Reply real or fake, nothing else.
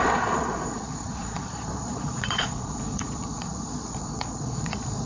fake